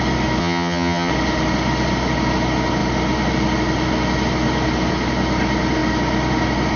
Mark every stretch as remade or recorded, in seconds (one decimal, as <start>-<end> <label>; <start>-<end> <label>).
0.0-0.4 recorded; 0.4-1.1 remade; 1.1-6.8 recorded